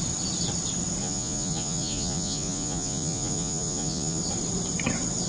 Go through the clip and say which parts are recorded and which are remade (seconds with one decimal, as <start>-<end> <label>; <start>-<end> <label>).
0.0-1.0 recorded; 1.0-4.2 remade; 4.2-5.3 recorded